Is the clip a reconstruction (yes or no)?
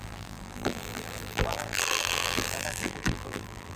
yes